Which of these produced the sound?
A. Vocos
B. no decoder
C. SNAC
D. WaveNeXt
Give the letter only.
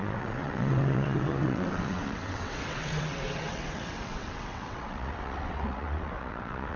D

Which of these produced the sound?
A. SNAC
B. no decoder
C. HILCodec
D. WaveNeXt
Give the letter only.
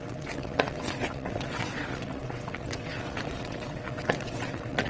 D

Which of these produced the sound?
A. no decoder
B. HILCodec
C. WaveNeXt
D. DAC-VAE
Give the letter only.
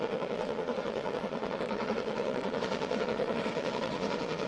C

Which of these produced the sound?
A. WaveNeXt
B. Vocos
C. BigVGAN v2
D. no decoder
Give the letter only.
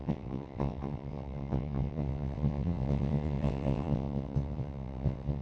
A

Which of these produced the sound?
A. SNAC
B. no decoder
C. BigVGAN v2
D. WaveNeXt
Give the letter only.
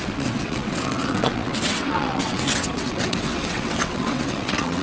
D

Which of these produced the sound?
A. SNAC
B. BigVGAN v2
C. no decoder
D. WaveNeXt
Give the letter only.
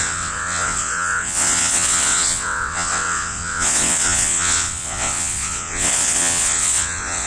D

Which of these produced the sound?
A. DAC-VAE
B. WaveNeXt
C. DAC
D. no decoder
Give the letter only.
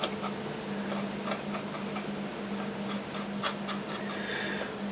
D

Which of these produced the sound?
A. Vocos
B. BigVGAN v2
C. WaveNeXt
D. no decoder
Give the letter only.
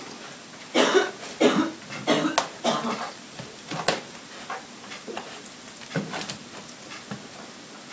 D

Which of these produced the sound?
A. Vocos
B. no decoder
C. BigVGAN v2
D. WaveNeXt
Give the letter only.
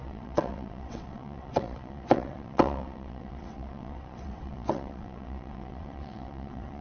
D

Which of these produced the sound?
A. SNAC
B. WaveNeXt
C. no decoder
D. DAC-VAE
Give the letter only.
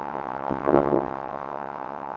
B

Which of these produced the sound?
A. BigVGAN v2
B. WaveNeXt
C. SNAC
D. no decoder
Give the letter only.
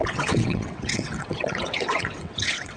B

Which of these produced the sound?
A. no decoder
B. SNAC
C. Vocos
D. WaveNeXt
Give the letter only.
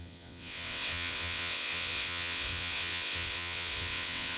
D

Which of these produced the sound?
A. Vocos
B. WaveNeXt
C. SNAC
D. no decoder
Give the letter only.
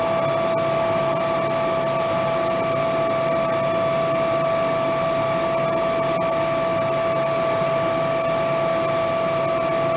D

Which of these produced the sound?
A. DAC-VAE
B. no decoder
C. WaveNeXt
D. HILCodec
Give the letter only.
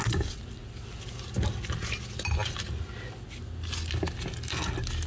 B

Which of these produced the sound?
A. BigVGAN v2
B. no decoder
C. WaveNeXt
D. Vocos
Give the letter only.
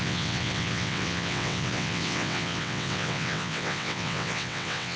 C